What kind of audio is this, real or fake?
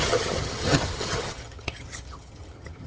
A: fake